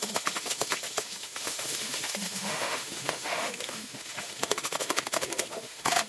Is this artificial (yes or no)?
yes